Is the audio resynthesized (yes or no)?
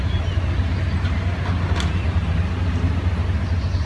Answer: no